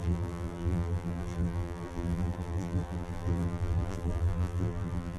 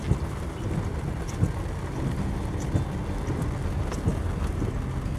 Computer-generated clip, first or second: first